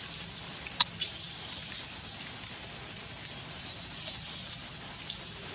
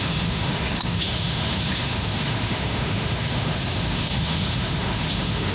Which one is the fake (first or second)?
second